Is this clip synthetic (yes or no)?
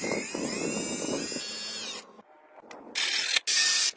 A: no